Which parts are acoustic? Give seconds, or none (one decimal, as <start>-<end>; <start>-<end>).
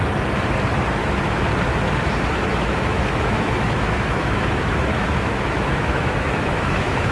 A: 0.0-1.0; 1.5-2.5